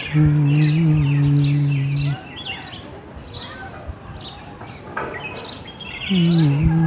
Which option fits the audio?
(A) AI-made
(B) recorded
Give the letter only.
B